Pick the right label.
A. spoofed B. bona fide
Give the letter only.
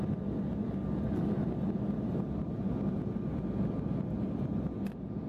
B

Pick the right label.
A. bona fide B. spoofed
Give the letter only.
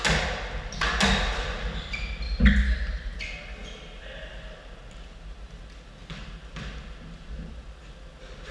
A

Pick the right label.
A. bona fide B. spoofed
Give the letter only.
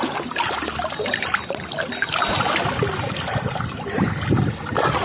A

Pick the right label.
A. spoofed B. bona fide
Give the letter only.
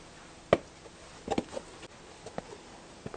B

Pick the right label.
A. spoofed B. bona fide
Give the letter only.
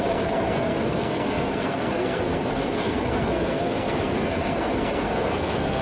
A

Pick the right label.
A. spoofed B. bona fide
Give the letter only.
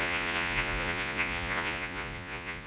A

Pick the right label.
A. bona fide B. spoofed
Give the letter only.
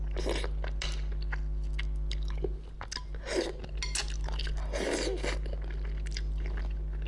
A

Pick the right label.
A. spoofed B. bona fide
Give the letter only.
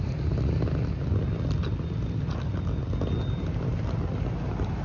B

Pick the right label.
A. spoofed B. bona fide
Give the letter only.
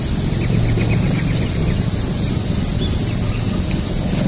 B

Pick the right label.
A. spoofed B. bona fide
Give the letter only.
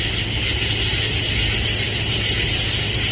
B